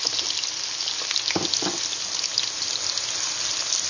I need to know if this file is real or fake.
real